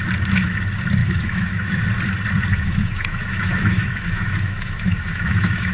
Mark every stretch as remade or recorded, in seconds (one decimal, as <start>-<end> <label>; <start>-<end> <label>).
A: 0.0-1.0 recorded; 1.0-1.8 remade; 1.8-2.5 recorded; 2.5-5.7 remade